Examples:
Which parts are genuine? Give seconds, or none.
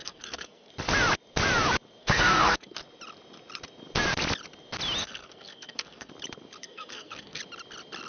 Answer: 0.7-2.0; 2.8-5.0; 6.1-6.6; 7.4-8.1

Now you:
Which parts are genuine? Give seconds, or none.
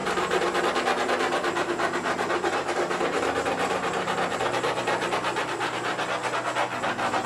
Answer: 0.6-1.6; 5.9-7.3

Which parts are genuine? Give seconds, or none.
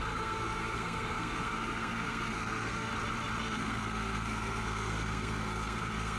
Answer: 2.9-3.4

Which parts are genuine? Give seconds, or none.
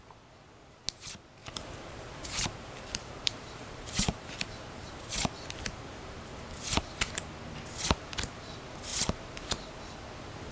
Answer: 0.0-1.4; 4.9-5.9; 7.2-8.9; 9.7-10.5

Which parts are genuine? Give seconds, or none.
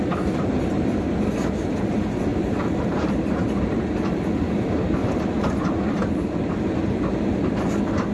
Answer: 0.0-2.3; 3.4-5.0; 5.7-8.1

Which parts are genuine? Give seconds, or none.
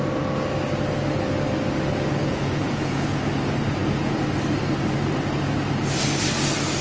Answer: 0.0-2.2; 3.2-6.8